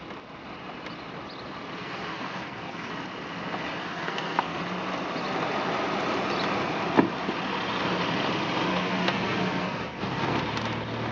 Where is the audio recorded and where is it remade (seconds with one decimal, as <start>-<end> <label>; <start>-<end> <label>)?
0.0-1.8 recorded; 1.8-2.9 remade; 2.9-3.8 recorded; 3.8-4.6 remade; 4.6-8.7 recorded; 8.7-10.4 remade; 10.4-11.1 recorded

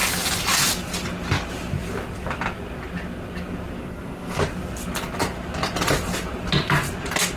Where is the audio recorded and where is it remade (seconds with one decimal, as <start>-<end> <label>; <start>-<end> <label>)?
0.0-3.8 recorded; 3.8-4.4 remade; 4.4-7.4 recorded

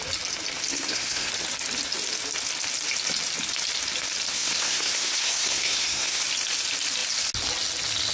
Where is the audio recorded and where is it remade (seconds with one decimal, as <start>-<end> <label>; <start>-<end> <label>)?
0.0-0.7 recorded; 0.7-1.3 remade; 1.3-4.3 recorded; 4.3-6.2 remade; 6.2-8.1 recorded

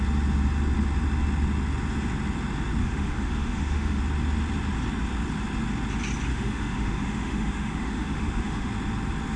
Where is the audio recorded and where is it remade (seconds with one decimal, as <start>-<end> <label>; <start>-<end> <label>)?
0.0-2.8 recorded; 2.8-4.0 remade; 4.0-6.3 recorded; 6.3-8.7 remade; 8.7-9.4 recorded

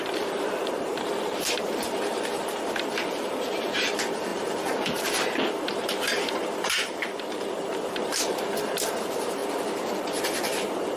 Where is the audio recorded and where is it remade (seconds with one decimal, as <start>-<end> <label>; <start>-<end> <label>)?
0.0-9.4 remade; 9.4-10.0 recorded; 10.0-11.0 remade

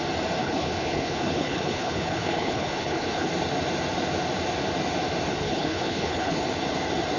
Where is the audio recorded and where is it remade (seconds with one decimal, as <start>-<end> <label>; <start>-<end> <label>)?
0.0-0.4 recorded; 0.4-3.3 remade; 3.3-5.4 recorded; 5.4-6.4 remade; 6.4-7.2 recorded

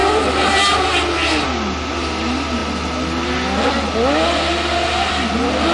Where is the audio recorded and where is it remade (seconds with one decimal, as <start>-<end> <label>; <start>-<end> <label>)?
0.0-5.7 recorded